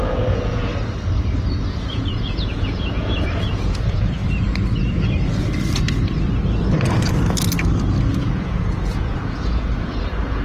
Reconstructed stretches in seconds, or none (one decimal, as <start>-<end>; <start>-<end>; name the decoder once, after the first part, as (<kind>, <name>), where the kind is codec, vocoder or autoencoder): 0.0-0.7 (vocoder, Vocos); 1.5-4.2; 8.2-10.4